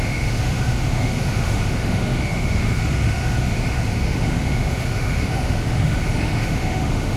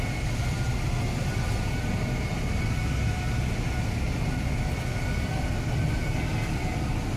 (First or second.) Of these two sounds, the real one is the second